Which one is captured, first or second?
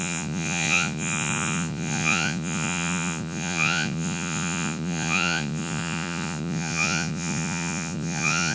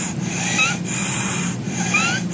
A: second